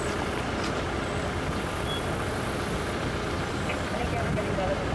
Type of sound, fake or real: real